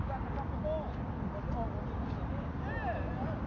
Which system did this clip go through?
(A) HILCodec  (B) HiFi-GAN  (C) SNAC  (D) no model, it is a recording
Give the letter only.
D